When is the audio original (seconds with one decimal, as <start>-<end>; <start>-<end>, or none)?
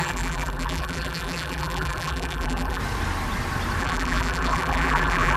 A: 2.8-3.8